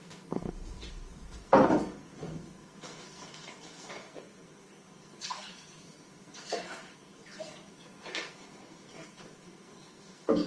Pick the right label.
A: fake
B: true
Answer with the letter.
A